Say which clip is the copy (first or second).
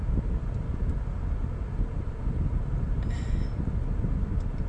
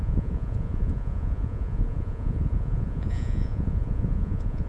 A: second